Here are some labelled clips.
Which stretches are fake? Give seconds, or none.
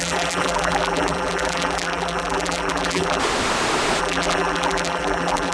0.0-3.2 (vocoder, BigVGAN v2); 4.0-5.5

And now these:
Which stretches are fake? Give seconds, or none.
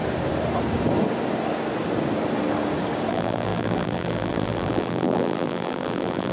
3.1-6.3 (vocoder, BigVGAN v2)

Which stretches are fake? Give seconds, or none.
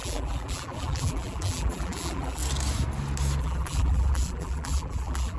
0.0-2.4 (vocoder, BigVGAN v2); 3.4-5.4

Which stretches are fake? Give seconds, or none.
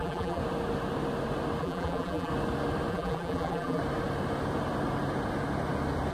0.0-0.4 (vocoder, BigVGAN v2); 1.6-2.3; 2.9-3.8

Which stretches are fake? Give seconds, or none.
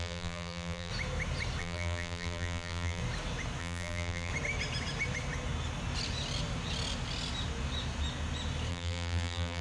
0.0-0.9 (vocoder, BigVGAN v2); 1.6-3.0; 3.6-4.3; 8.7-9.6